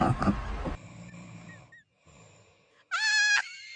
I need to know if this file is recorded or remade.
recorded